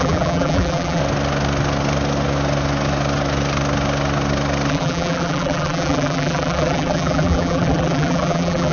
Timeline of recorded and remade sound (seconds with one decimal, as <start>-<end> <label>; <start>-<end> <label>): 0.0-1.0 remade; 1.0-4.7 recorded; 4.7-8.7 remade